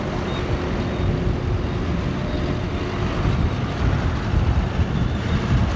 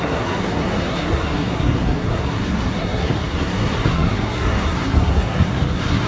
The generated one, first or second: second